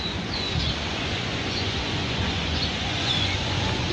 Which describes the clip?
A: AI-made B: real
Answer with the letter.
A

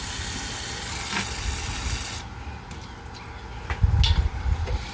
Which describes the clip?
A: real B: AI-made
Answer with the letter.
A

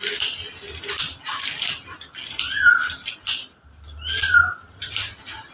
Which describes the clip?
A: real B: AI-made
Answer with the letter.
A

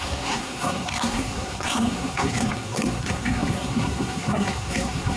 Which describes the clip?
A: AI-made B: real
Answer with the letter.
A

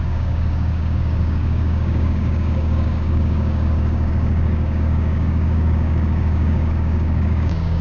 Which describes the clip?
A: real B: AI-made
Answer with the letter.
B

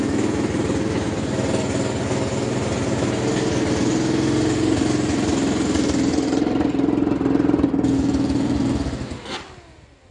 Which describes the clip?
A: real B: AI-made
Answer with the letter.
A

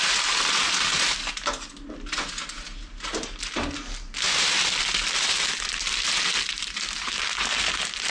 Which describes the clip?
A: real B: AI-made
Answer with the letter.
A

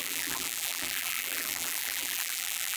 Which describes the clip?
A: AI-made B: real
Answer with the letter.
A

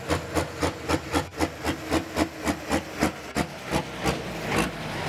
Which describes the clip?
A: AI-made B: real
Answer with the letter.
B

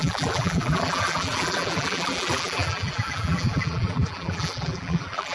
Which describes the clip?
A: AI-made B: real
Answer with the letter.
A